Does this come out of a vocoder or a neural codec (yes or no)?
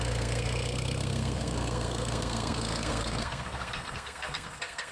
yes